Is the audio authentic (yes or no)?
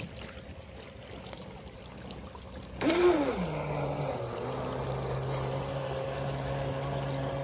yes